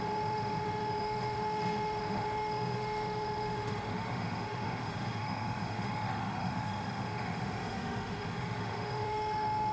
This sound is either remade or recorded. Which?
remade